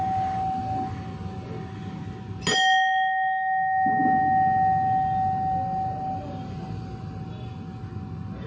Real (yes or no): yes